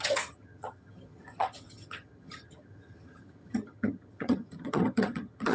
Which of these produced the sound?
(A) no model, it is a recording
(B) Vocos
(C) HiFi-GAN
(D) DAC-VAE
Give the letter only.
C